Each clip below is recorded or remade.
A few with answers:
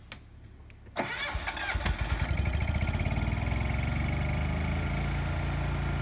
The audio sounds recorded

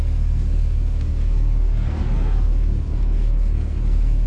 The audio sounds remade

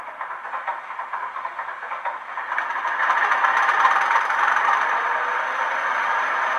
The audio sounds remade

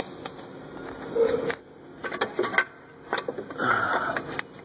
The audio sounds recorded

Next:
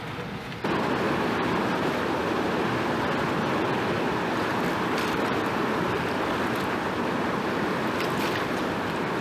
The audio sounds recorded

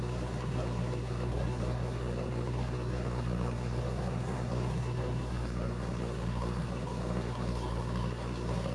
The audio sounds remade